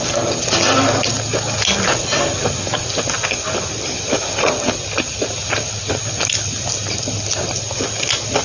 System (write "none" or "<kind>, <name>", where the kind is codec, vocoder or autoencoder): none